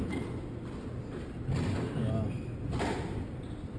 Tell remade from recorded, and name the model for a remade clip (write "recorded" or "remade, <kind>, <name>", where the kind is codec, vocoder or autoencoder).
recorded